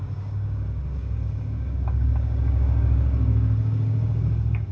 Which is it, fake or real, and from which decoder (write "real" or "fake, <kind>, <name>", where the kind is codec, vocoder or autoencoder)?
fake, codec, DAC